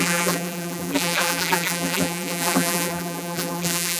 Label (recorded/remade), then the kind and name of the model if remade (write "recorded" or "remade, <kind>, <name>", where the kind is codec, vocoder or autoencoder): remade, vocoder, BigVGAN v2